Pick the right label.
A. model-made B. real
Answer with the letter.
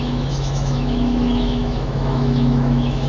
A